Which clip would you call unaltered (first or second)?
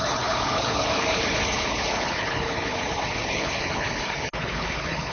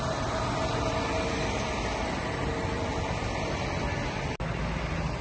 second